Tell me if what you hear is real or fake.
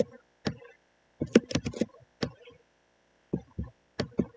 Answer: real